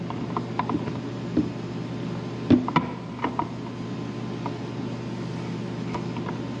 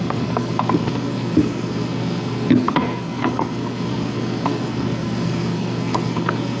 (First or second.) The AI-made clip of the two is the second